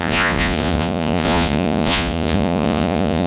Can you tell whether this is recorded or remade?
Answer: remade